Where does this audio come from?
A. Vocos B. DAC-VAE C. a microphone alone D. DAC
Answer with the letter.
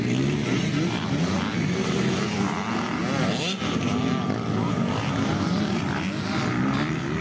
C